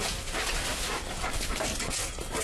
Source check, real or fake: real